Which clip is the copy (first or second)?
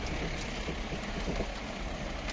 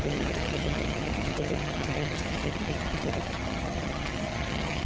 second